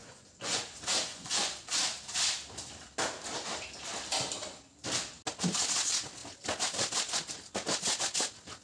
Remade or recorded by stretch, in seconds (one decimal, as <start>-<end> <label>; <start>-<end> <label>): 0.0-0.6 remade; 0.6-1.1 recorded; 1.1-1.7 remade; 1.7-8.6 recorded

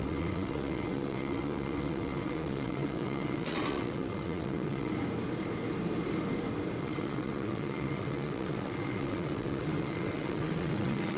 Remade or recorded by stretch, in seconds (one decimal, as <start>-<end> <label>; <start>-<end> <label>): 0.0-4.9 remade; 4.9-6.8 recorded; 6.8-11.2 remade